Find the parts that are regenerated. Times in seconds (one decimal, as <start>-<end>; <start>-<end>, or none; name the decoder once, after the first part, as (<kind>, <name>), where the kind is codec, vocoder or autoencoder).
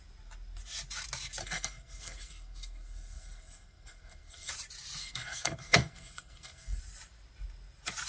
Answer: 1.4-4.5 (codec, SNAC); 5.0-6.8